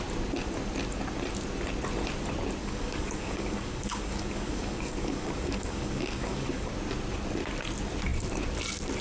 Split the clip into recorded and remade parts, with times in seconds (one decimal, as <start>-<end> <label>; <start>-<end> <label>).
0.0-2.6 recorded; 2.6-6.7 remade; 6.7-9.0 recorded